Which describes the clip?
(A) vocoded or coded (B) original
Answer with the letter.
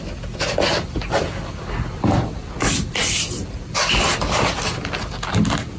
B